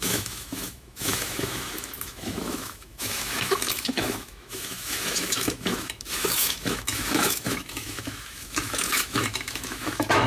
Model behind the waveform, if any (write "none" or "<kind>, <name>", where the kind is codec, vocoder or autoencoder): autoencoder, DAC-VAE